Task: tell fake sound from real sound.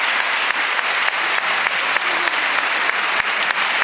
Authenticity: real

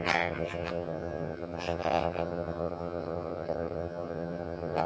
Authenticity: fake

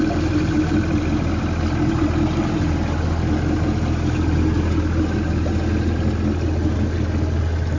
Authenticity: real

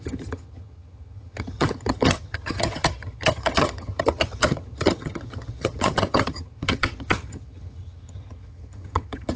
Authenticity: fake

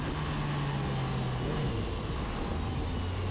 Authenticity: real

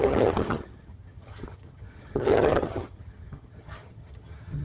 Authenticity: fake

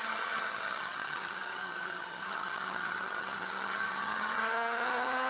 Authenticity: fake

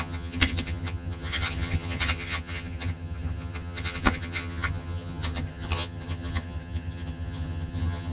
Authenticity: fake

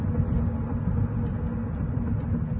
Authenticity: real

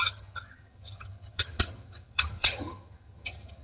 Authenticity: fake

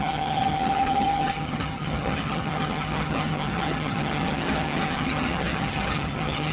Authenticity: fake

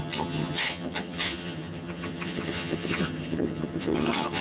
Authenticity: fake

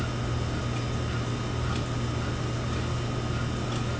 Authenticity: real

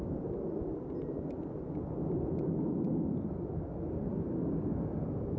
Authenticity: real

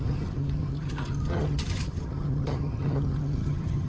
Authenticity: fake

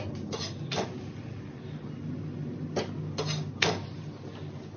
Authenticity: real